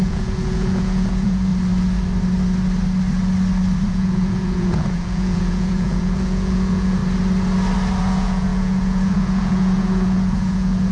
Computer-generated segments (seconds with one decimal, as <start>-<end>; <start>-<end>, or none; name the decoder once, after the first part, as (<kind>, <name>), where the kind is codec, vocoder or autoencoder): 0.0-1.5 (vocoder, Vocos); 3.9-7.0; 8.0-10.9